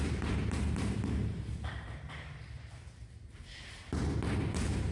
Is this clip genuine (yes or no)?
no